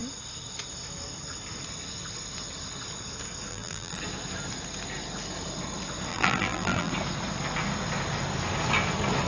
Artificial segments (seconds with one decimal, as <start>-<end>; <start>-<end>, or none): 3.5-4.0; 6.1-6.9